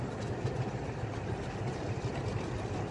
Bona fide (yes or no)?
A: yes